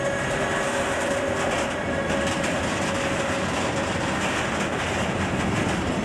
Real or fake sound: real